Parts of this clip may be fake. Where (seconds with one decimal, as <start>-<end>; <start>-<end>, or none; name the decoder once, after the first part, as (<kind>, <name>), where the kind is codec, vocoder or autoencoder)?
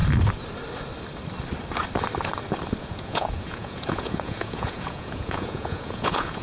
2.8-6.4 (vocoder, Vocos)